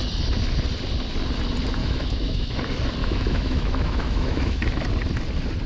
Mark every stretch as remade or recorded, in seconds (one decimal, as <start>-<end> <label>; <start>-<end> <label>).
0.0-1.8 recorded; 1.8-2.6 remade; 2.6-3.0 recorded; 3.0-4.8 remade; 4.8-5.7 recorded